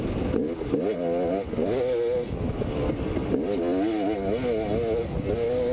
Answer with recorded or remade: recorded